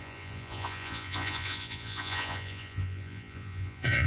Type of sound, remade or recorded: remade